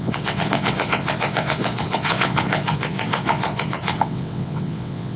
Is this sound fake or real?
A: fake